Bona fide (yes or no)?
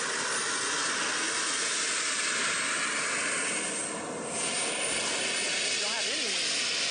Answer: yes